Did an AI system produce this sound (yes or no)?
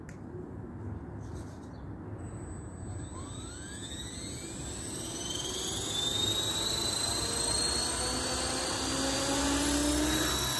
no